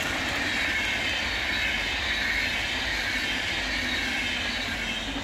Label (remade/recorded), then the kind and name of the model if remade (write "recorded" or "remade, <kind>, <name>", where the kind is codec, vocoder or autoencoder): recorded